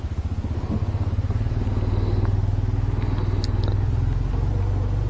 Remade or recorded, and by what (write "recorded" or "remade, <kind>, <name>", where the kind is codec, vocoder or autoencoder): recorded